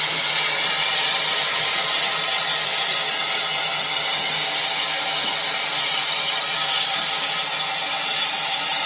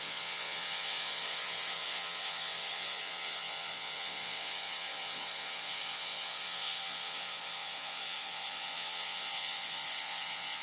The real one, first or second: first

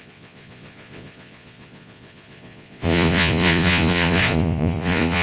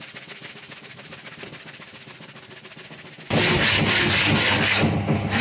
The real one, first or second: second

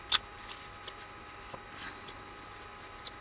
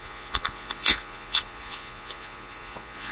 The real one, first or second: first